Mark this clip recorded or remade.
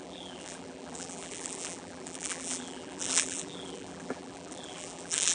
remade